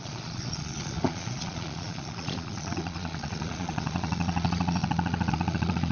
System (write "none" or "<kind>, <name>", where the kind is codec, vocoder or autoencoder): vocoder, Vocos